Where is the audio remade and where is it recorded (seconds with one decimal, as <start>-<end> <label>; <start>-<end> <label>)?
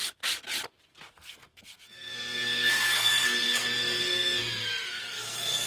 0.0-1.1 recorded; 1.1-5.7 remade